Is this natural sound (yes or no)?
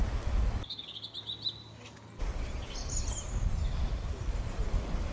yes